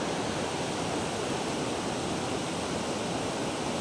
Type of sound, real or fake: real